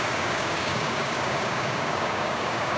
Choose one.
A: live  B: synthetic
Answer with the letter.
B